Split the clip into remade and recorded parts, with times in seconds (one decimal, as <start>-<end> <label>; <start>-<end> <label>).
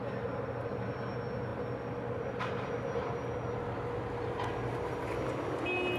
0.0-6.0 recorded